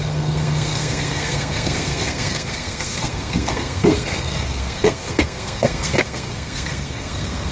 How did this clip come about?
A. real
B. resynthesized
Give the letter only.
B